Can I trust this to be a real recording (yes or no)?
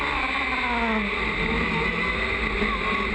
yes